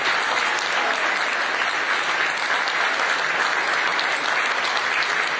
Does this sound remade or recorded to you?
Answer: recorded